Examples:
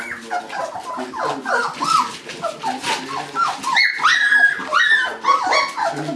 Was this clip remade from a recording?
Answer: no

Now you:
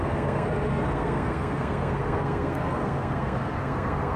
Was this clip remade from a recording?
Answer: yes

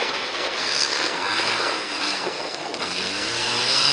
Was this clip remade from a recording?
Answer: yes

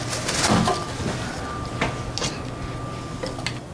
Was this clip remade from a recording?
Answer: no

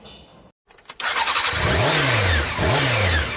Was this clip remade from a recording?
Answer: no